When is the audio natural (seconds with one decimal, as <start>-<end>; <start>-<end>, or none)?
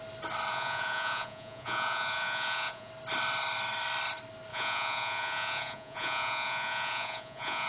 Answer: 0.0-0.5; 2.9-4.5